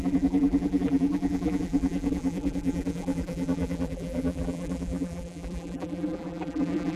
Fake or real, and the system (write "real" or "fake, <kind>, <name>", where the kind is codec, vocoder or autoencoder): fake, vocoder, BigVGAN v2